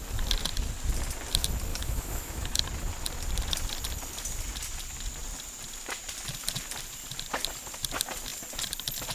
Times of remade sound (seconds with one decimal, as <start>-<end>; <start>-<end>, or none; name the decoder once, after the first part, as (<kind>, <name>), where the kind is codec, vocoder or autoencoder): 1.7-2.6 (autoencoder, DAC-VAE)